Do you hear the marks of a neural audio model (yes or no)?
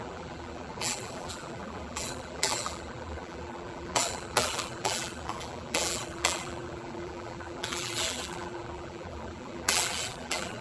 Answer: yes